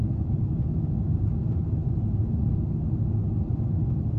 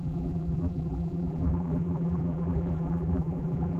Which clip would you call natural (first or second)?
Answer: first